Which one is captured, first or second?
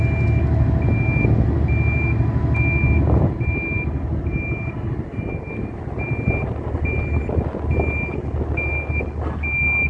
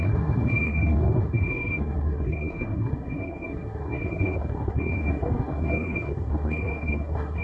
first